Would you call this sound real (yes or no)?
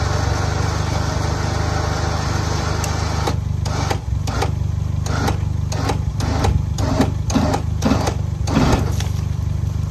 yes